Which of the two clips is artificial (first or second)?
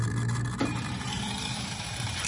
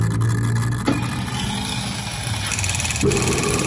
first